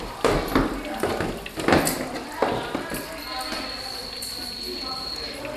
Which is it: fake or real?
real